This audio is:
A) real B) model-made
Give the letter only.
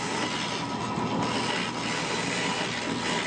A